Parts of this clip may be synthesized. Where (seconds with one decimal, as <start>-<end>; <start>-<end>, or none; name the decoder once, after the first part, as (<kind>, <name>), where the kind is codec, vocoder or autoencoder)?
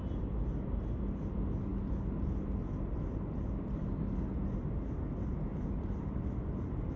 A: none